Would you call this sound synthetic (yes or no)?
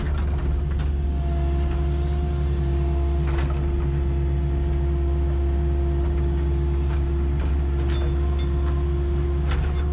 no